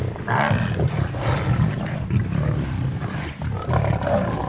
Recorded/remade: recorded